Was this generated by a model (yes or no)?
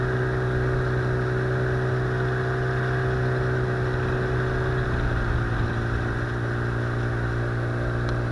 no